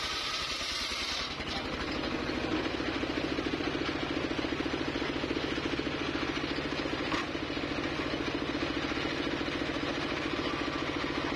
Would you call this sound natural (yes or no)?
yes